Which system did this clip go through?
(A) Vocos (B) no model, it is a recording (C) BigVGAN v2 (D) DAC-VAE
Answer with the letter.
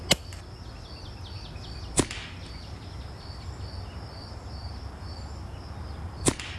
B